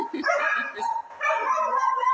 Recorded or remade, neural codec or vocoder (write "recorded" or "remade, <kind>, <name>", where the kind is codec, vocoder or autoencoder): recorded